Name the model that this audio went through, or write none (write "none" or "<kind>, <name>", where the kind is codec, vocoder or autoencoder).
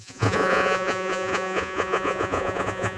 vocoder, Vocos